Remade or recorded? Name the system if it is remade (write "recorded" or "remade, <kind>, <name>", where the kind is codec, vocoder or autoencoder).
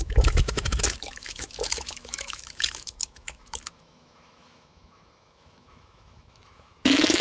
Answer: remade, autoencoder, DAC-VAE